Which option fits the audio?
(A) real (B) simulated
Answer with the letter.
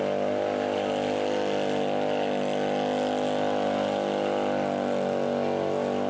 A